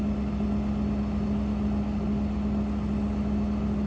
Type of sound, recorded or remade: recorded